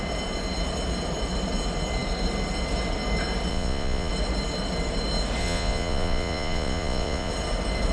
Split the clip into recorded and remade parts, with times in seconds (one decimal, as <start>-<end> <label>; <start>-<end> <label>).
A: 0.0-3.5 recorded; 3.5-4.1 remade; 4.1-5.4 recorded; 5.4-7.3 remade; 7.3-7.9 recorded